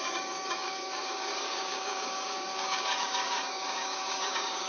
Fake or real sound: fake